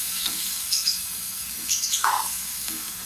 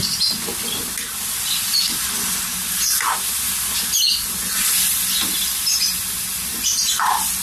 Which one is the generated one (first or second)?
first